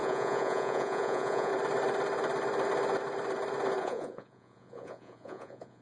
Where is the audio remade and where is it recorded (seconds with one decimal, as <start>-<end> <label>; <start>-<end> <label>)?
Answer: 0.0-1.5 remade; 1.5-3.8 recorded; 3.8-5.8 remade